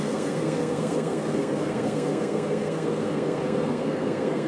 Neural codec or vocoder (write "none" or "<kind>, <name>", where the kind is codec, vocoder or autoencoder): codec, SNAC